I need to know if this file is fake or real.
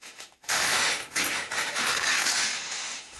fake